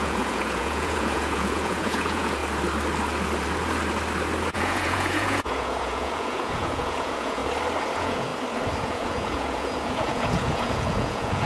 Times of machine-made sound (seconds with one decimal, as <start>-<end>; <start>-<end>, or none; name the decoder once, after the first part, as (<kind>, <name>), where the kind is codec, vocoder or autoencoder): 0.0-2.4 (vocoder, Vocos); 4.5-7.4; 7.9-8.3; 8.8-11.5